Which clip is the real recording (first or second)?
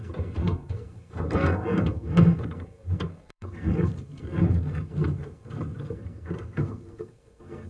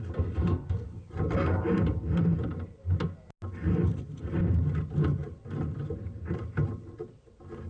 second